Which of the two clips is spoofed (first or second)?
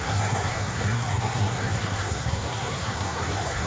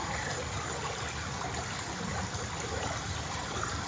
first